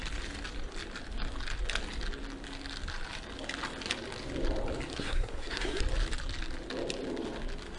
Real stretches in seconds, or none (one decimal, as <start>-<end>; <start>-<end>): 0.0-4.9; 5.8-7.8